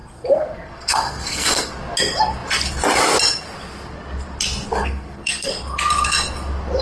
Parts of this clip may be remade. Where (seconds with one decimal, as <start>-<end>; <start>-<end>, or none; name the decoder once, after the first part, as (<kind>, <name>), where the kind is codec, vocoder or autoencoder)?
0.0-1.7 (codec, SNAC); 4.8-5.5